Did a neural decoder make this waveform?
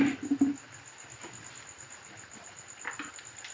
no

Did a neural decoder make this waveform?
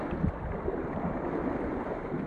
no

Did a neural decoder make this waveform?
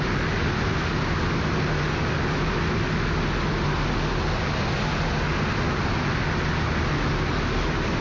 no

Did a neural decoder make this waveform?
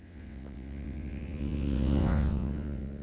yes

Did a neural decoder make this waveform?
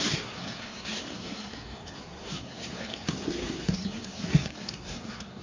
yes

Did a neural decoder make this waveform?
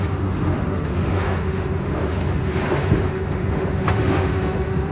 yes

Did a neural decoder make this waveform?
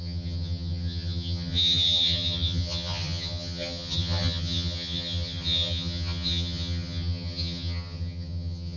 yes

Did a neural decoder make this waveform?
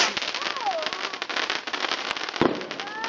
no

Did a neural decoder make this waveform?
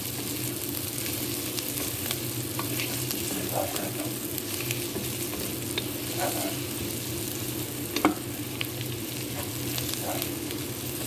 no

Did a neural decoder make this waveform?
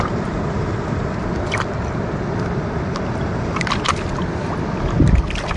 no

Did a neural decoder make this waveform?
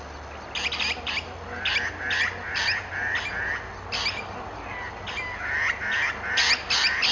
no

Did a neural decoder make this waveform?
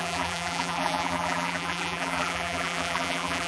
yes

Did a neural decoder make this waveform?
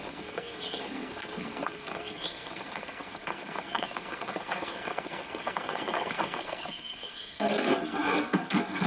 yes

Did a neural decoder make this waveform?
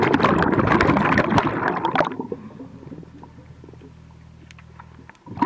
no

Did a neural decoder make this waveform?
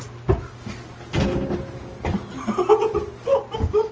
no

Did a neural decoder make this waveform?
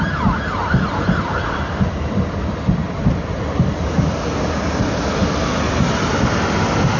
no